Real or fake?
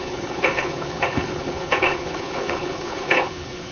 fake